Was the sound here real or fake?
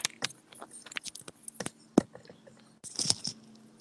real